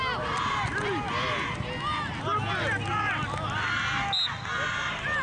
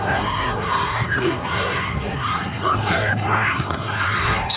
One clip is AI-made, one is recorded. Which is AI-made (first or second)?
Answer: second